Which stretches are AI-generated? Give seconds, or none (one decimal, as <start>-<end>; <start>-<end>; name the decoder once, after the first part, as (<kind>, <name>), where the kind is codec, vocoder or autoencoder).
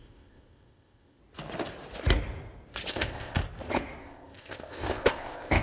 0.0-1.2 (codec, ZipCodec); 2.9-3.4; 4.0-5.6